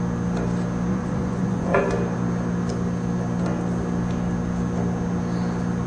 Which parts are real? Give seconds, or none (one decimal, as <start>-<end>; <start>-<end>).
0.0-0.9; 1.8-5.9